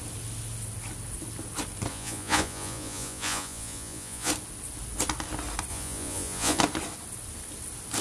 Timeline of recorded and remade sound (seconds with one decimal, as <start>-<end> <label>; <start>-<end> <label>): 0.0-1.9 recorded; 1.9-4.3 remade; 4.3-5.7 recorded; 5.7-6.6 remade; 6.6-8.0 recorded